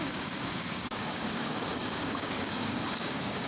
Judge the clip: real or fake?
fake